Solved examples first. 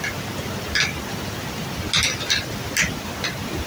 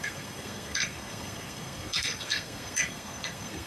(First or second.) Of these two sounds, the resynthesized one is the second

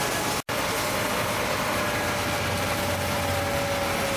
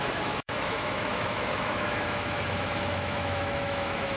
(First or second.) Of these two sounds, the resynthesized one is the second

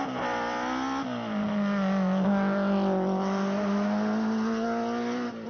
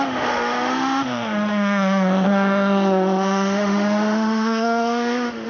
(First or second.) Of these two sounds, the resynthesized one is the second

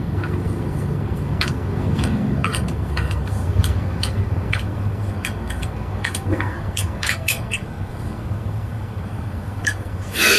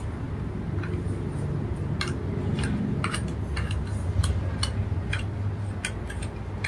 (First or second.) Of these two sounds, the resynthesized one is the first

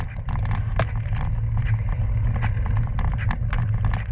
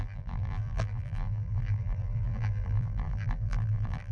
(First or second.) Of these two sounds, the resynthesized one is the second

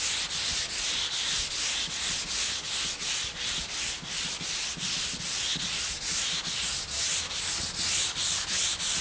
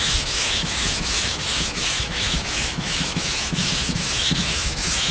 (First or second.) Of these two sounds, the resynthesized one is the second